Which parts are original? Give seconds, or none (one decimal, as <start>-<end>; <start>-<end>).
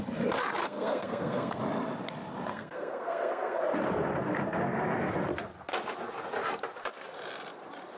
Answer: 0.0-0.6; 1.6-2.5; 3.6-8.0